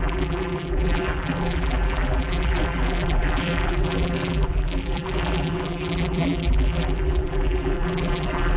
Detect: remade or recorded remade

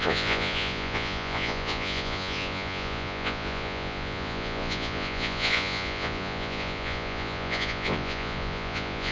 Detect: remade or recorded remade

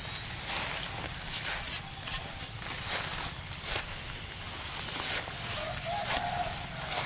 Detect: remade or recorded recorded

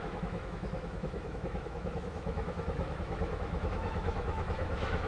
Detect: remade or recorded remade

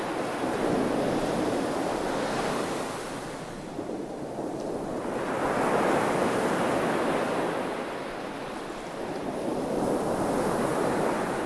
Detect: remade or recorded recorded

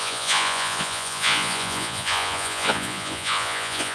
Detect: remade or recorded remade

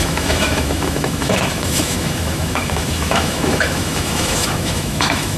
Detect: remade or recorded remade